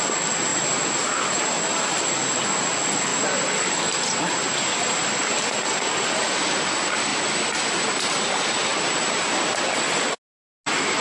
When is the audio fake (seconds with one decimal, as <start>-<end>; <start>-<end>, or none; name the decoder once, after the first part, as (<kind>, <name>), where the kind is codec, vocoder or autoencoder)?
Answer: 0.5-1.1 (vocoder, BigVGAN v2); 3.1-5.3